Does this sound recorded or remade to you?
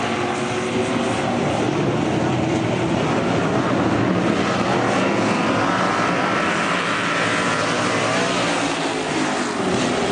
recorded